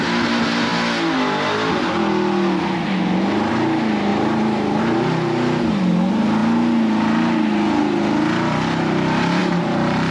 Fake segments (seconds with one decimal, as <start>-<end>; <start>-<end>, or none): 4.1-4.8; 9.4-10.1

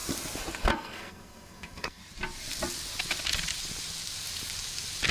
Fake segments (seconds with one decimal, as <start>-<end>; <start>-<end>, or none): 0.7-2.0

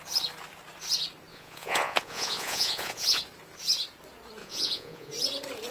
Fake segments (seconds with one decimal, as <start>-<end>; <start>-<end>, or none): 1.3-3.2; 4.4-5.1

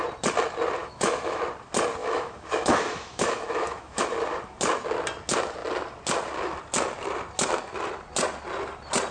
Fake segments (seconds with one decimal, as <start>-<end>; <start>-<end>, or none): 0.8-1.4; 2.0-4.0